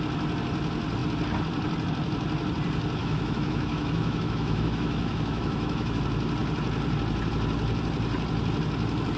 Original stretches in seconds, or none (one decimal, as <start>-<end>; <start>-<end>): 0.0-3.0; 6.0-9.2